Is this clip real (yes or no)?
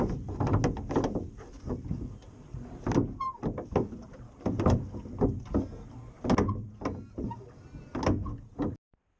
yes